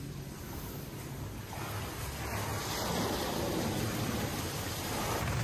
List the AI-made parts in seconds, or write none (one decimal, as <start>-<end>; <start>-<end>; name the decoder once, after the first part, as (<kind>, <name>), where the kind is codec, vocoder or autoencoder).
4.3-5.4 (vocoder, BigVGAN v2)